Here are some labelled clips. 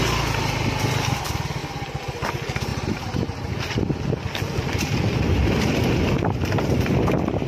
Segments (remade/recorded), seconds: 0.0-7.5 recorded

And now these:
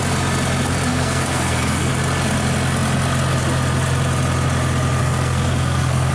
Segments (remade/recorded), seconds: 0.0-0.9 recorded; 0.9-1.9 remade; 1.9-5.0 recorded; 5.0-6.1 remade

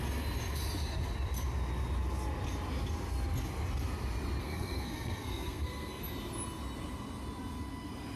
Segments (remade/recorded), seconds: 0.0-4.4 recorded; 4.4-6.0 remade; 6.0-8.2 recorded

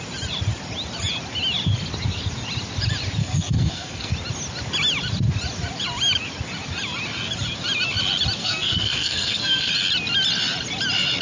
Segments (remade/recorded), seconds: 0.0-3.2 recorded; 3.2-4.1 remade; 4.1-8.4 recorded; 8.4-9.7 remade; 9.7-11.2 recorded